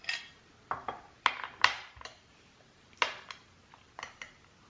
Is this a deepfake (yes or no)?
no